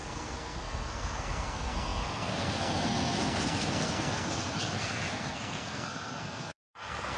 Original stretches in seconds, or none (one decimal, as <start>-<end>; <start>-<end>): none